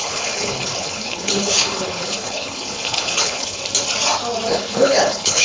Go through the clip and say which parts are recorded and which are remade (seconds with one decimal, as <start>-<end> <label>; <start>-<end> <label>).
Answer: 0.0-3.6 remade; 3.6-4.5 recorded; 4.5-5.4 remade